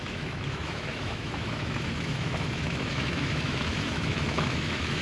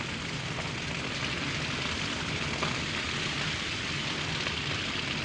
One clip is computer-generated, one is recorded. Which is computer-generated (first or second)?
first